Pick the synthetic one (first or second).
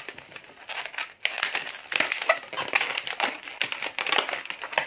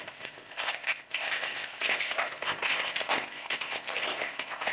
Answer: second